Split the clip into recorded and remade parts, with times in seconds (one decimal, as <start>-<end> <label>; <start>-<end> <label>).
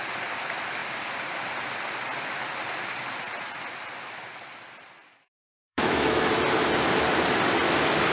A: 0.0-5.2 recorded; 5.2-6.4 remade; 6.4-8.1 recorded